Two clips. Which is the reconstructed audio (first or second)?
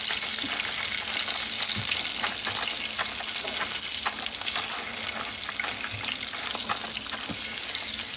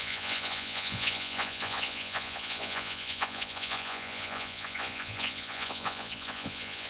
second